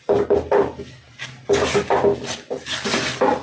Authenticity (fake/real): real